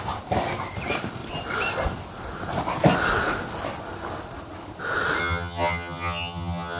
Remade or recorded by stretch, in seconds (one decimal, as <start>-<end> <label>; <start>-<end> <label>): 0.0-5.2 recorded; 5.2-6.8 remade